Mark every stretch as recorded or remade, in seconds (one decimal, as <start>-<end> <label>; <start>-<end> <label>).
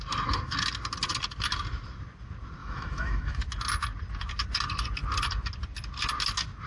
0.0-2.6 recorded; 2.6-3.4 remade; 3.4-6.7 recorded